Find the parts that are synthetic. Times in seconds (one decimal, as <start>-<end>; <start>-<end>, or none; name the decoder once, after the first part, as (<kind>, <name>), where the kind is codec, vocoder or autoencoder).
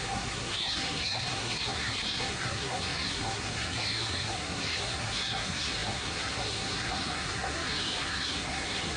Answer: 0.0-9.0 (codec, SNAC)